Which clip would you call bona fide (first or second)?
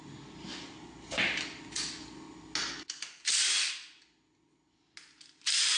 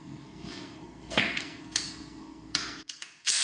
first